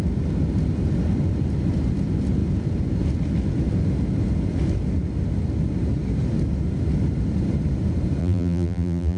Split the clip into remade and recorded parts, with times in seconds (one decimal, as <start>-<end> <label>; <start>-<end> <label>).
0.0-8.2 recorded; 8.2-9.2 remade